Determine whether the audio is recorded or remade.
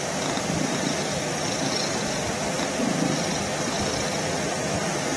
recorded